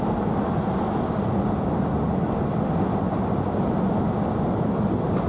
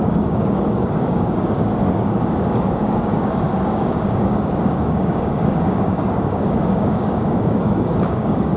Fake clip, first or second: second